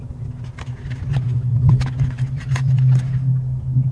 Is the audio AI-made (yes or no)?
no